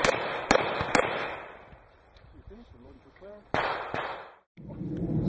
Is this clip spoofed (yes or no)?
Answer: yes